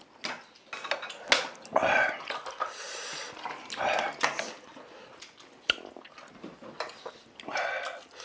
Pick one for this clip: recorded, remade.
recorded